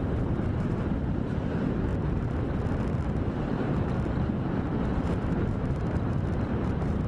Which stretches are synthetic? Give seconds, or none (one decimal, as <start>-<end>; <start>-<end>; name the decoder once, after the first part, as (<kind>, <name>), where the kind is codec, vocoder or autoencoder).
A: 0.0-1.9 (vocoder, BigVGAN v2); 4.5-7.1